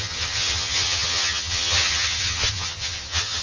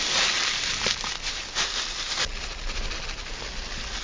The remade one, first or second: first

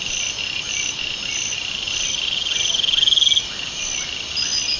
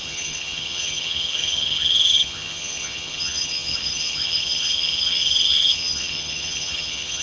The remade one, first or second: second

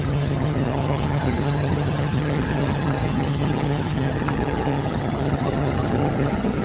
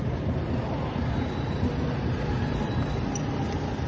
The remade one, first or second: first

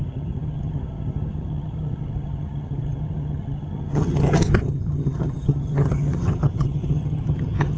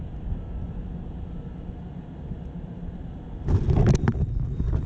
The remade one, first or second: first